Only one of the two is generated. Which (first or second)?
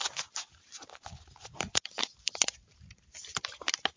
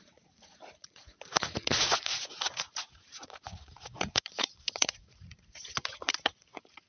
second